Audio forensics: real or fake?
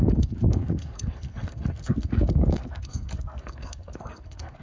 fake